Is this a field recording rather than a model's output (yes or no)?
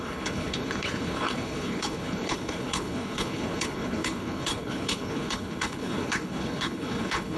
no